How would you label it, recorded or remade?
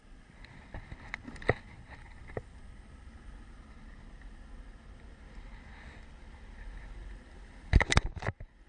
recorded